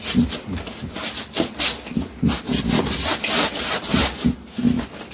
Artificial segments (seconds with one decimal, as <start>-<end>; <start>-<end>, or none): 2.5-4.0